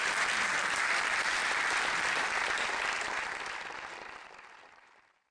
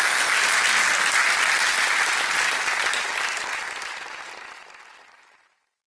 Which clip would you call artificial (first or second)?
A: first